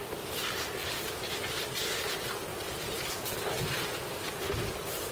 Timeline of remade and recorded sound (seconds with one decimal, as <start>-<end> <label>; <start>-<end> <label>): 0.0-0.8 recorded; 0.8-2.0 remade; 2.0-2.5 recorded; 2.5-5.1 remade